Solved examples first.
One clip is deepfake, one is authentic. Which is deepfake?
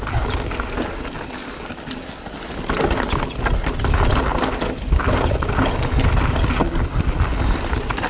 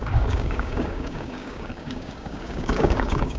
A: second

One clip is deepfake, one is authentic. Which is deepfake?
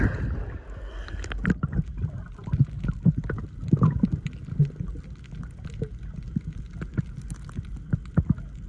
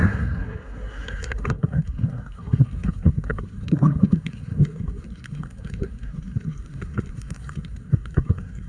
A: second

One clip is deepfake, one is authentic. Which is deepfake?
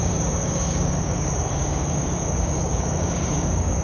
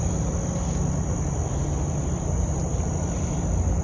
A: first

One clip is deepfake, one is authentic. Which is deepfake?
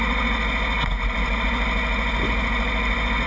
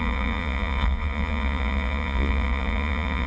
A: second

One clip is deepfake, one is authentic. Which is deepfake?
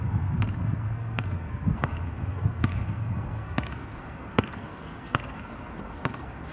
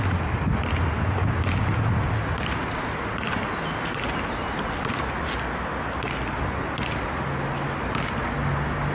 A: first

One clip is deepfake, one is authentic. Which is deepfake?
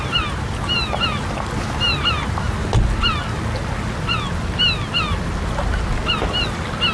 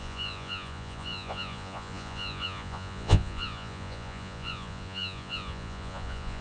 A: second